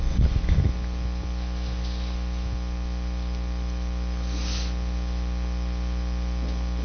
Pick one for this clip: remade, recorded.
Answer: recorded